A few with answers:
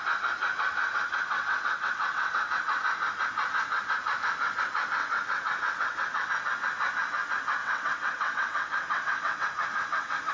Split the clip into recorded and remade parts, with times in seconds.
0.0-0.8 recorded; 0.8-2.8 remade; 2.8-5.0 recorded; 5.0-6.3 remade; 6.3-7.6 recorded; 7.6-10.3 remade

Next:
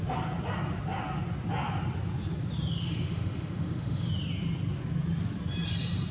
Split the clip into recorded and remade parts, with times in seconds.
0.0-2.8 recorded; 2.8-4.1 remade; 4.1-6.1 recorded

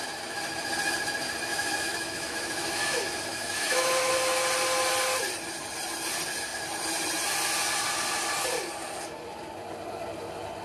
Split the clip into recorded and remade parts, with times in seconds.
0.0-1.5 recorded; 1.5-4.1 remade; 4.1-10.6 recorded

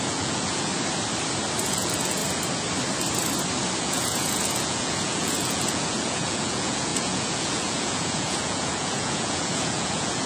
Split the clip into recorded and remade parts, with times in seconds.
0.0-0.7 remade; 0.7-1.7 recorded; 1.7-2.2 remade; 2.2-3.8 recorded; 3.8-10.3 remade